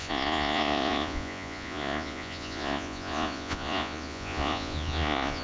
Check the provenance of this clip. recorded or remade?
remade